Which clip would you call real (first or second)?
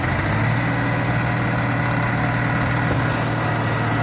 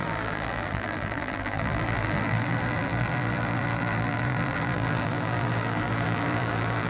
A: first